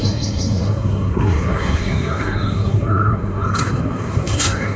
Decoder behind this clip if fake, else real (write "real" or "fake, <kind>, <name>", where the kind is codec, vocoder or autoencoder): fake, codec, SNAC